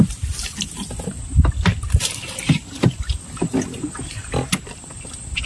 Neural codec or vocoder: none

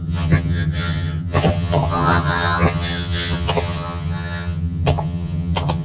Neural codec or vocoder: vocoder, HiFi-GAN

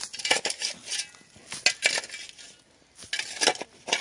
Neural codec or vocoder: none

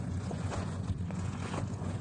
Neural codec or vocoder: vocoder, Vocos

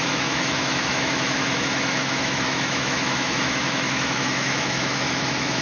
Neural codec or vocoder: autoencoder, DAC-VAE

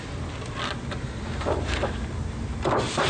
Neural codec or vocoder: none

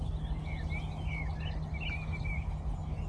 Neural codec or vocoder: none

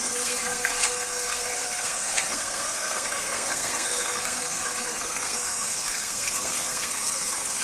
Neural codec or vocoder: codec, SNAC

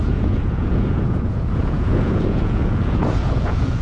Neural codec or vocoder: vocoder, Vocos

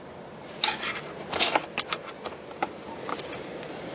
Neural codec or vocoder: none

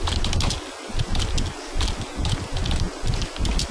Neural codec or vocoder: none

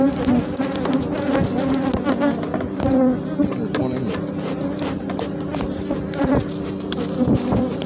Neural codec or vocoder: none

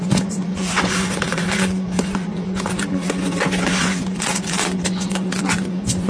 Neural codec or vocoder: vocoder, Vocos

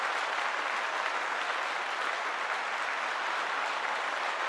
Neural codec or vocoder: none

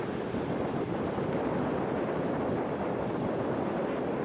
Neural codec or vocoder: none